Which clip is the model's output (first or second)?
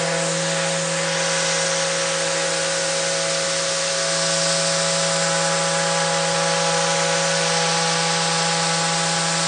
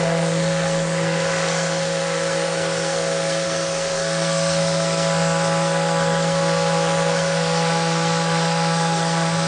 second